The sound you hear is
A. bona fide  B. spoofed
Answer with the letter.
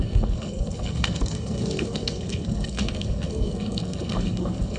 B